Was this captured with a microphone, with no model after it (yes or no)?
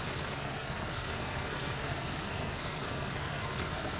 no